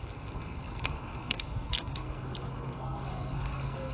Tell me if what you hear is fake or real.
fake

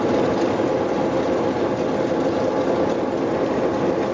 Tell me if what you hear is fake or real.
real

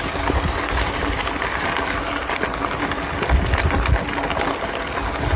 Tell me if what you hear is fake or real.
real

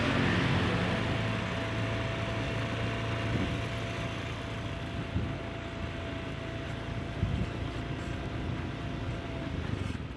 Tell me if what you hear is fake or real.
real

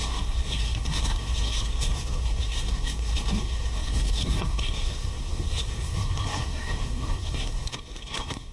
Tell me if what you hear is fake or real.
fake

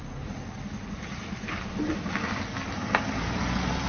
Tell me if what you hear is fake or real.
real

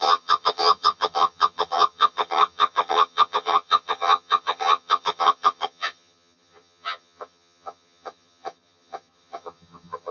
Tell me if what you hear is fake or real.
fake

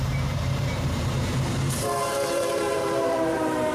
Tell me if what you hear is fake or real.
fake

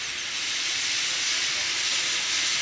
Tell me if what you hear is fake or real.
real